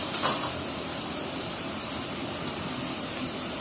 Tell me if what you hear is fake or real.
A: fake